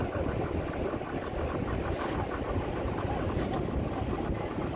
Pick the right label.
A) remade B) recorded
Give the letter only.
B